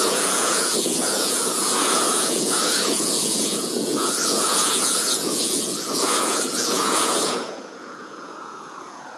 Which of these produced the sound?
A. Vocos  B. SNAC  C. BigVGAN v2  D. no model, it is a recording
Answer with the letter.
A